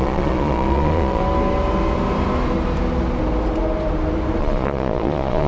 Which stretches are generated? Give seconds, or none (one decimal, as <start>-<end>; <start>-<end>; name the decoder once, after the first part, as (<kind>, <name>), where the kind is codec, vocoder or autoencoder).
0.0-1.2 (vocoder, Vocos); 4.4-5.5